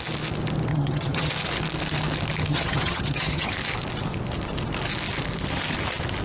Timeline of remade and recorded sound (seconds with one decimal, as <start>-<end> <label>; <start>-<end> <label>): 0.0-0.7 recorded; 0.7-1.3 remade; 1.3-2.5 recorded; 2.5-3.5 remade; 3.5-6.2 recorded